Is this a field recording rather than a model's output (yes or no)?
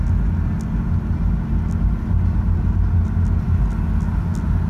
yes